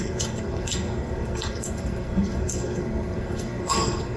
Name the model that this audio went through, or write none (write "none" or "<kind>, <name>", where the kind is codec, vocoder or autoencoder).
codec, SNAC